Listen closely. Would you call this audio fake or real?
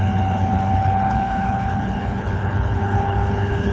fake